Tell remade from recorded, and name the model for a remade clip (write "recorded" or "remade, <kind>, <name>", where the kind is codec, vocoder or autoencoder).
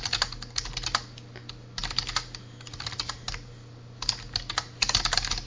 recorded